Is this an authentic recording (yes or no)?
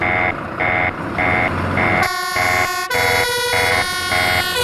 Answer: yes